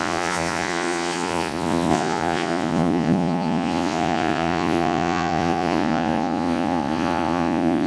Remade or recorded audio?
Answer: remade